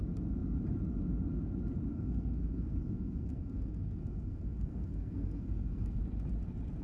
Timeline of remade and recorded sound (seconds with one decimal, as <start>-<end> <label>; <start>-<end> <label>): 0.0-1.9 recorded; 1.9-6.0 remade; 6.0-6.8 recorded